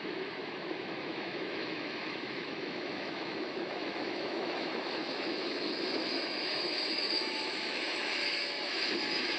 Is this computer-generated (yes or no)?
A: yes